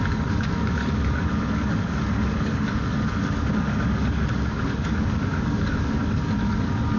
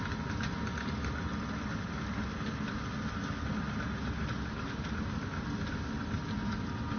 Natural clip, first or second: second